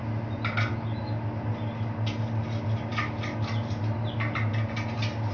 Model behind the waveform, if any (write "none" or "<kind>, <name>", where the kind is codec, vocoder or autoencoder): none